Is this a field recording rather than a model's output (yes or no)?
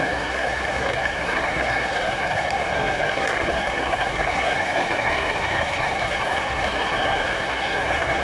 no